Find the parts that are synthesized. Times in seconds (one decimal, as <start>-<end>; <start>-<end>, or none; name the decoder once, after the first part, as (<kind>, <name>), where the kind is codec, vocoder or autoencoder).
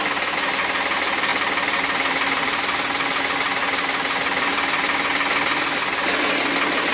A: 1.3-3.2 (vocoder, BigVGAN v2)